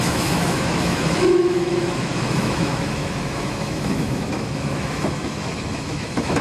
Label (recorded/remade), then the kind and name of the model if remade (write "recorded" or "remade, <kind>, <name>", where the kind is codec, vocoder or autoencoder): remade, autoencoder, DAC-VAE